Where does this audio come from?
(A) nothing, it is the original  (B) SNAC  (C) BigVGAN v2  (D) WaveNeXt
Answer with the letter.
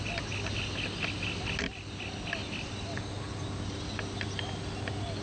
A